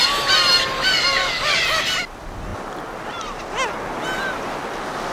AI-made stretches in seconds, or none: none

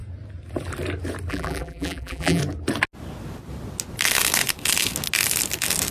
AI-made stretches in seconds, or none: 1.3-2.4 (vocoder, BigVGAN v2)

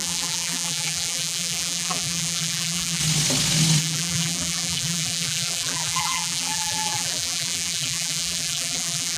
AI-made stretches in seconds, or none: 0.0-3.0 (vocoder, BigVGAN v2); 3.8-9.2

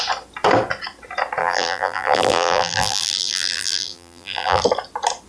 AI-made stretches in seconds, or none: 1.4-4.6 (vocoder, BigVGAN v2)

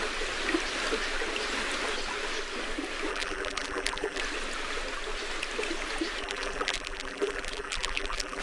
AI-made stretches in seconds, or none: 3.1-4.2 (vocoder, BigVGAN v2); 6.2-8.4

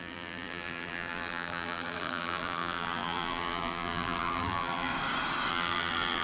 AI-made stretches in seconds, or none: 0.0-4.9 (vocoder, BigVGAN v2); 5.5-6.2

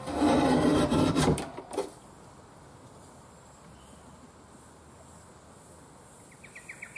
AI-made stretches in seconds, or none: 0.7-4.0 (vocoder, BigVGAN v2)